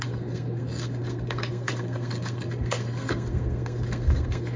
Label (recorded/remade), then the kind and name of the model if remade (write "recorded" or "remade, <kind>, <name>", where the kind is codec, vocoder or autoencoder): remade, codec, SNAC